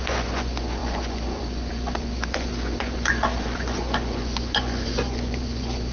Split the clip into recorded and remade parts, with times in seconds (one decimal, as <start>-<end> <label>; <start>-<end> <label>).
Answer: 0.0-5.9 remade